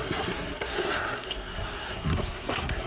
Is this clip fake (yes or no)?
yes